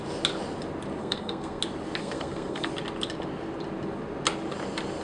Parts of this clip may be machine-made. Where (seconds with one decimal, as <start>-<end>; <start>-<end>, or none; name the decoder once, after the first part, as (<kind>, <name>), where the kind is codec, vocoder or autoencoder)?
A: 1.0-1.6 (codec, SNAC); 2.0-2.7